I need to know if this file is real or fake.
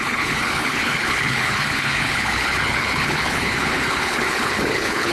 fake